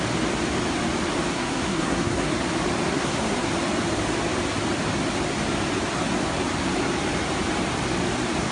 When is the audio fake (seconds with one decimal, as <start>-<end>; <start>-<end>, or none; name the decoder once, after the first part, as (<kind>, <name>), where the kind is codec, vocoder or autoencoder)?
1.3-2.3 (codec, SNAC); 2.9-3.5

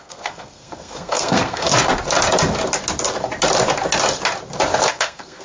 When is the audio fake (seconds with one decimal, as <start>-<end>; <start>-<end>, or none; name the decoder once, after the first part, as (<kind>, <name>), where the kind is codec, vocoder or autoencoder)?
0.0-1.7 (codec, SNAC); 4.9-5.4

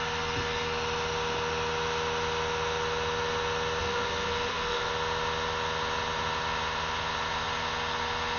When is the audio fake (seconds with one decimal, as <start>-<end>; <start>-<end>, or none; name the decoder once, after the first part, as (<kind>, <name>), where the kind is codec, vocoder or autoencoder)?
3.8-4.9 (codec, SNAC)

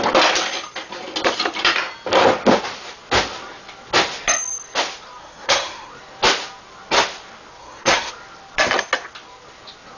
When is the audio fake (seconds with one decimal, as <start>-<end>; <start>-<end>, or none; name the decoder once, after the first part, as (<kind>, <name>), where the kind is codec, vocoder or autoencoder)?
5.2-5.9 (codec, SNAC); 7.6-8.1

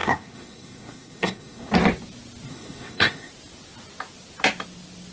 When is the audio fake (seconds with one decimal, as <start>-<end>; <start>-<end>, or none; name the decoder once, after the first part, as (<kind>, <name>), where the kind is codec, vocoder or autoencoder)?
0.0-1.7 (codec, SNAC); 2.5-3.3

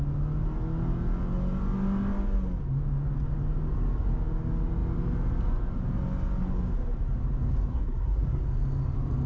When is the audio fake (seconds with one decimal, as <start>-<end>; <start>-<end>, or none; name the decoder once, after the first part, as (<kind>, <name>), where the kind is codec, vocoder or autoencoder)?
7.7-8.4 (codec, SNAC)

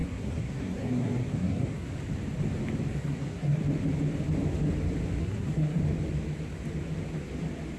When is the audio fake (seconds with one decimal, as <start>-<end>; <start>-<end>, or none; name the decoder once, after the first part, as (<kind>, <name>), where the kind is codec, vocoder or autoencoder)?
0.0-1.9 (codec, SNAC); 2.9-3.6; 5.2-5.8

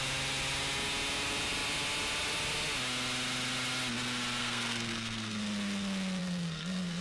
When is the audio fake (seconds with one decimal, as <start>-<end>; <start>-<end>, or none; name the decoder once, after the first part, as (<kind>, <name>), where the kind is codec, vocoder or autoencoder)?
4.4-5.4 (codec, SNAC); 6.2-7.0